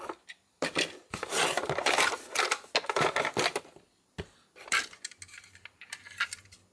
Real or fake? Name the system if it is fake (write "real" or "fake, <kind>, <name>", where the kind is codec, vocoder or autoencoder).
real